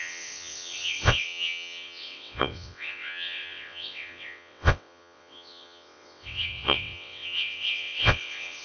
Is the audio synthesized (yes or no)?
yes